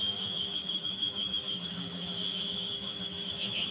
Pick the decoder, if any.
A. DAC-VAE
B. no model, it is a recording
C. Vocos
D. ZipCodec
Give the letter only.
A